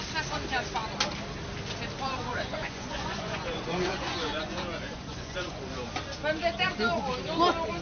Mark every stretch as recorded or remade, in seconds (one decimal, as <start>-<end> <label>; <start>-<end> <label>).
0.0-2.3 recorded; 2.3-5.6 remade; 5.6-7.8 recorded